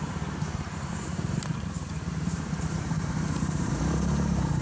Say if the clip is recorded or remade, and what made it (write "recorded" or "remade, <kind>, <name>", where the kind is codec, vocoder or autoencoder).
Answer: remade, vocoder, BigVGAN v2